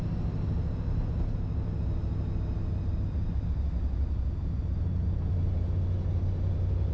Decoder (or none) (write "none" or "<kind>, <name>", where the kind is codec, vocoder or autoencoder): none